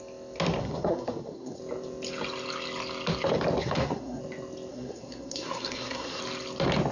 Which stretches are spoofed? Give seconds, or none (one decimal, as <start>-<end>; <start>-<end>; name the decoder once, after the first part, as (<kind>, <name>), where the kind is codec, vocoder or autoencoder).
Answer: 0.6-1.6 (codec, SNAC); 3.6-4.2; 4.7-6.2